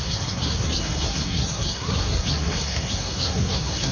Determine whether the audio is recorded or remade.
remade